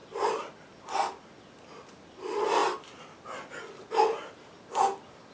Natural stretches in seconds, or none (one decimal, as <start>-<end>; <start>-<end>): 0.0-5.3